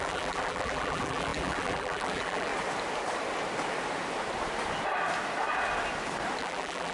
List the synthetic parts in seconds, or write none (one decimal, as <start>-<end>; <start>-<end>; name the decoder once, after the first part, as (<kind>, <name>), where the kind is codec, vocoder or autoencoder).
0.0-2.5 (vocoder, BigVGAN v2); 6.4-6.9